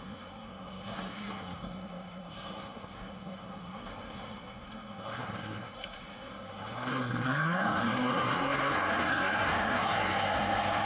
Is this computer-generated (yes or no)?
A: yes